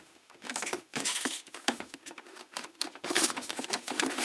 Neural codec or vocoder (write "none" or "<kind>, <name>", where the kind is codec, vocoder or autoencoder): autoencoder, DAC-VAE